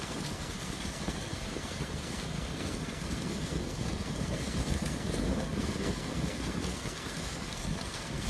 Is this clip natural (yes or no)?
no